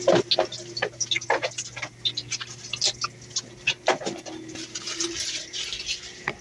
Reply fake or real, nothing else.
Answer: real